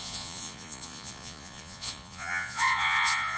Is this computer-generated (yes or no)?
yes